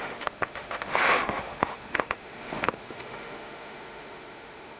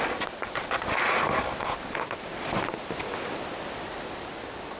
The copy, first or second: first